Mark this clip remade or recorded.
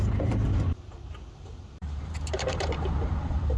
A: remade